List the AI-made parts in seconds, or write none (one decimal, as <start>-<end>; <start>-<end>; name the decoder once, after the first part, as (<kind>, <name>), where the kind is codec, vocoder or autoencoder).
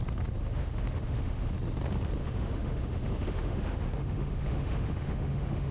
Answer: 0.4-1.5 (autoencoder, DAC-VAE); 2.2-5.7